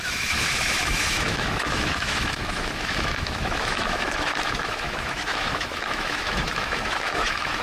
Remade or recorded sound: remade